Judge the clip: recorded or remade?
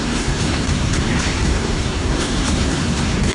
remade